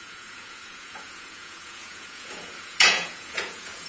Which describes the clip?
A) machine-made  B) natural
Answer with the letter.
A